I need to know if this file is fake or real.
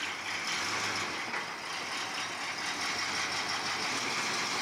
real